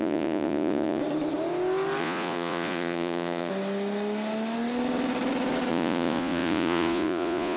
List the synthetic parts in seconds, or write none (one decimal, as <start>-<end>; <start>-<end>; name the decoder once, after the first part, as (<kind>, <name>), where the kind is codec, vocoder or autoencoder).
0.0-1.0 (vocoder, Vocos); 2.0-3.5; 5.7-7.6